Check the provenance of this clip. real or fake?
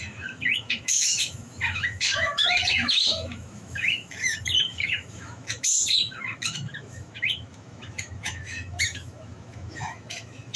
fake